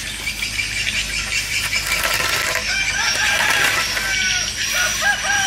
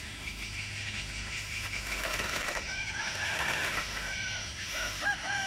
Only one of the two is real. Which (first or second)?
first